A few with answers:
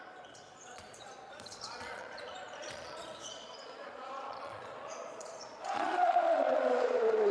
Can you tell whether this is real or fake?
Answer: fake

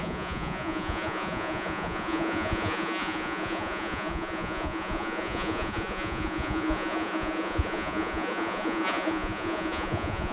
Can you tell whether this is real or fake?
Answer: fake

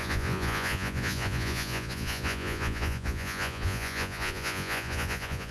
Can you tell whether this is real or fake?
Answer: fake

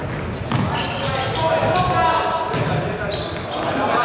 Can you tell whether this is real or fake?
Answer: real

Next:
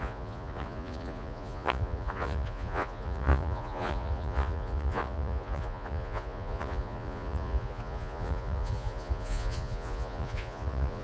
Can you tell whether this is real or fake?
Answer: fake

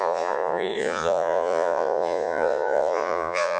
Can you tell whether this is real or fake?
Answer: fake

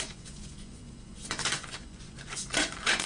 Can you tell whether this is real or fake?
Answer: fake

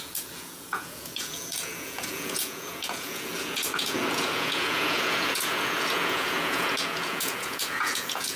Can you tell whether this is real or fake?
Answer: fake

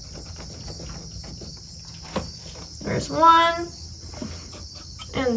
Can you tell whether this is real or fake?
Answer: real